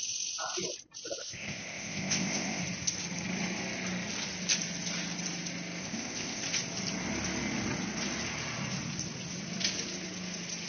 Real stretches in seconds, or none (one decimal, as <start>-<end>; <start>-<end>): 0.0-1.2; 2.6-5.8; 6.4-10.7